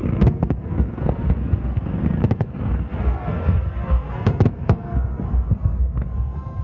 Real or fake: fake